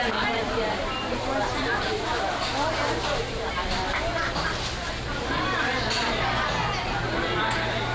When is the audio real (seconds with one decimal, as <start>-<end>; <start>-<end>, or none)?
0.0-7.9